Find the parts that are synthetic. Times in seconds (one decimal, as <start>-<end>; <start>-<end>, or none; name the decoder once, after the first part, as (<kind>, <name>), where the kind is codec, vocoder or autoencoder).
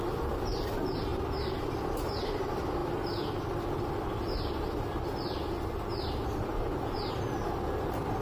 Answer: none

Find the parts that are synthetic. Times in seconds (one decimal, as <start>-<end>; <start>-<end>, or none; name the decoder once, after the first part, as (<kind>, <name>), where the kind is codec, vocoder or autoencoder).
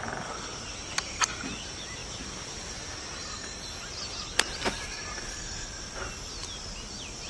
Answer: none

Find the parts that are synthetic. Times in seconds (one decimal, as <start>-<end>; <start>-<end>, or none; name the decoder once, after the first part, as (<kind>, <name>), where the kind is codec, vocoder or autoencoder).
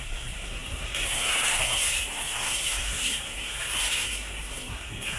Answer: 0.0-5.2 (codec, SNAC)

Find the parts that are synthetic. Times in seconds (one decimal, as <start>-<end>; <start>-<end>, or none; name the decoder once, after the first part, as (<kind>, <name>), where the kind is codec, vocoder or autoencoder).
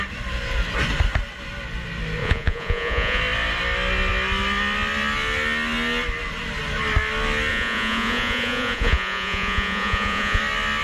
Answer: 2.2-3.2 (vocoder, Vocos); 7.5-10.4